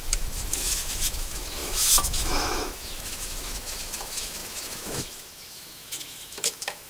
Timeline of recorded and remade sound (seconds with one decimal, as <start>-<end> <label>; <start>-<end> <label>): 0.0-6.9 remade